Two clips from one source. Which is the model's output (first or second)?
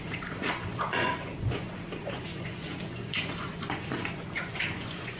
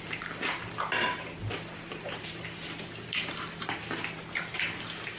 first